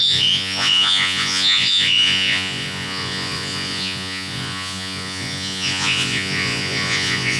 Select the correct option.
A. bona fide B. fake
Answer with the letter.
B